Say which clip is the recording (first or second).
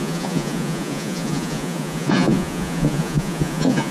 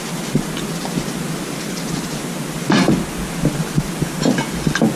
second